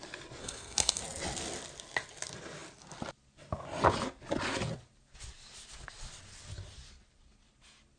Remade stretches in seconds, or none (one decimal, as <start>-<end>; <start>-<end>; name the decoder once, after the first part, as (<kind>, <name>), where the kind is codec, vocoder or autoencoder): 0.4-1.0 (codec, SNAC)